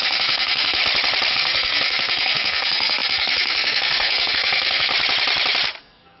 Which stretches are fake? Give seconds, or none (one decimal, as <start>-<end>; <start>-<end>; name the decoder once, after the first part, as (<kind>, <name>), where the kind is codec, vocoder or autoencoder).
0.0-0.8 (codec, SNAC); 1.3-4.9; 5.8-6.2